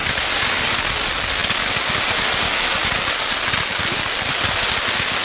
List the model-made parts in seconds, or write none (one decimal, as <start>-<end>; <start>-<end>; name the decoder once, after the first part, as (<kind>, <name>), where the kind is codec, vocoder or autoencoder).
none

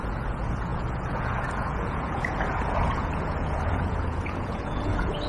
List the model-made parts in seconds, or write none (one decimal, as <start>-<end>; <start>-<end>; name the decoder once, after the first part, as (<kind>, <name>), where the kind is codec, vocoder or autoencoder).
0.0-5.3 (vocoder, Vocos)

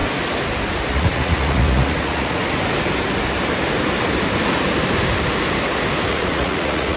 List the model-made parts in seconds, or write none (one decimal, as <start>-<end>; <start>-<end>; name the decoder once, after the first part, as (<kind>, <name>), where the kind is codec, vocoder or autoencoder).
0.9-2.4 (vocoder, Vocos); 6.1-7.0

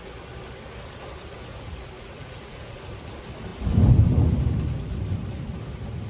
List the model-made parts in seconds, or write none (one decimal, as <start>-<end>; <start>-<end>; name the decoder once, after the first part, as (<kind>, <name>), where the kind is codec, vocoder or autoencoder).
1.5-2.8 (vocoder, Vocos)

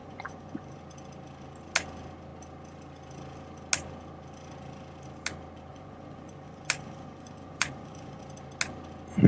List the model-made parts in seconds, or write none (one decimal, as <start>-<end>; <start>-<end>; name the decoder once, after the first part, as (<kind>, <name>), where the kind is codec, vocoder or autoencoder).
0.0-0.8 (vocoder, Vocos); 5.7-8.2